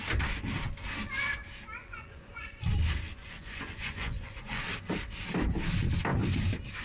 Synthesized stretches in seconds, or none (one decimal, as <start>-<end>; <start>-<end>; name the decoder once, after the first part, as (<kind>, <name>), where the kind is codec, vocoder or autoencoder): 1.8-2.6 (vocoder, Vocos); 3.2-4.6